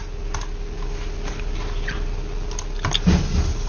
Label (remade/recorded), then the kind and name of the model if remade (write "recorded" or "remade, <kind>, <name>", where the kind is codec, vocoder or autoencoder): recorded